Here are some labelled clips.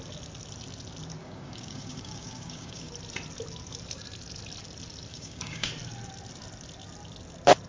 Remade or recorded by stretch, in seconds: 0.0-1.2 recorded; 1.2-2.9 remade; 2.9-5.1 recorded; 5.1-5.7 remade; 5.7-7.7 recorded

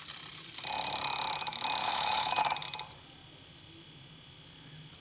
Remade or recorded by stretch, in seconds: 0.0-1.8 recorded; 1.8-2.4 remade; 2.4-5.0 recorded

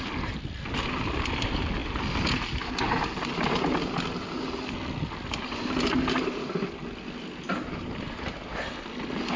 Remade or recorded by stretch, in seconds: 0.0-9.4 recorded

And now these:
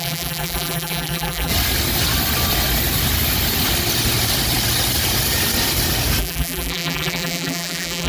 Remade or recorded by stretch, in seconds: 0.0-1.5 remade; 1.5-6.2 recorded; 6.2-8.1 remade

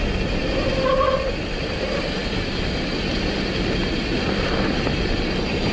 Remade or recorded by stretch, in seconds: 0.0-5.7 recorded

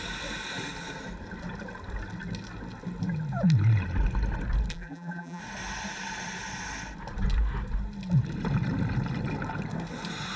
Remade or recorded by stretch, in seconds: 0.0-4.7 recorded; 4.7-5.4 remade; 5.4-10.4 recorded